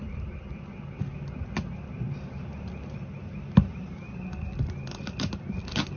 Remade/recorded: recorded